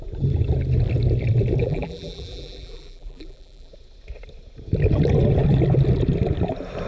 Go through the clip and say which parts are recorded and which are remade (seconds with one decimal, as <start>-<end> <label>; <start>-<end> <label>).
0.0-1.6 recorded; 1.6-3.7 remade; 3.7-6.9 recorded